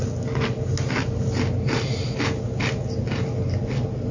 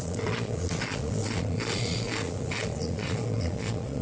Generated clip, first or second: second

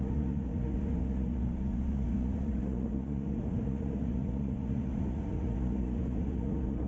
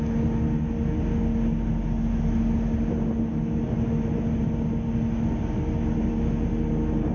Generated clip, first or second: first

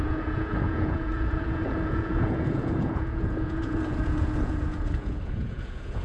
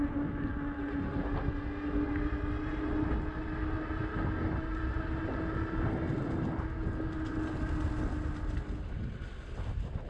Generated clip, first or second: first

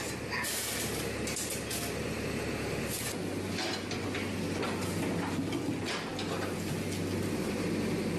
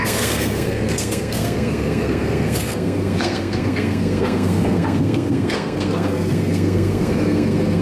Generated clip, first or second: second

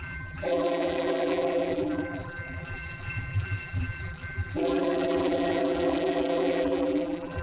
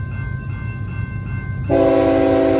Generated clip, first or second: first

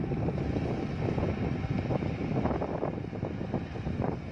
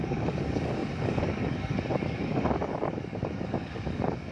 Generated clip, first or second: second